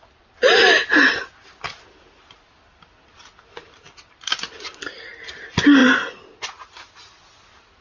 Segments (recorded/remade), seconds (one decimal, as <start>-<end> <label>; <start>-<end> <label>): 0.0-7.8 recorded